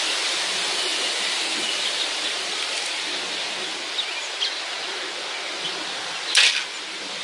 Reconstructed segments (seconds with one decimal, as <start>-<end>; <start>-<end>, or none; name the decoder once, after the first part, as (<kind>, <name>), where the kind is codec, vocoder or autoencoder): none